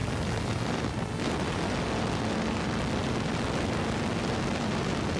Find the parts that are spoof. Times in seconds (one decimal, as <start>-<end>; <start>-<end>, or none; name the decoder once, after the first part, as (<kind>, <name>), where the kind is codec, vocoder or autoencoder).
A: none